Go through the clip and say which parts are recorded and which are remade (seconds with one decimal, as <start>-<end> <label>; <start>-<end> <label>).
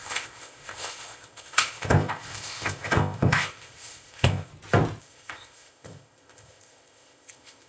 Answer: 0.0-4.5 remade; 4.5-5.0 recorded; 5.0-7.7 remade